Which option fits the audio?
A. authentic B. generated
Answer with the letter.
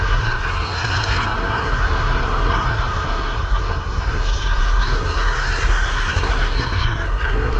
B